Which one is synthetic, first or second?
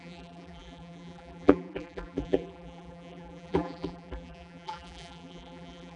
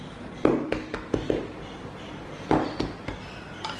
first